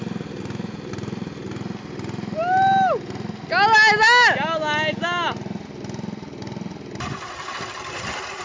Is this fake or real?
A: real